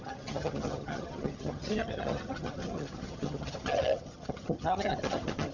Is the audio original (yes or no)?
no